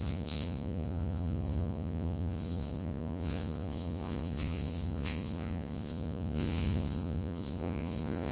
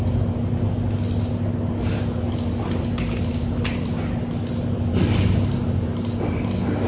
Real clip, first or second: second